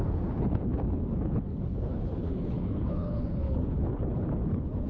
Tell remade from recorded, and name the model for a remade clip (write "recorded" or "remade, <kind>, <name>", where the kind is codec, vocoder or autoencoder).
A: remade, codec, HILCodec